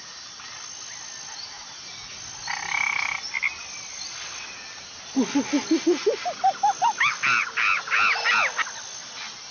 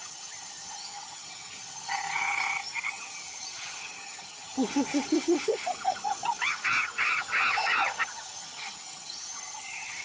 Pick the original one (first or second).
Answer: first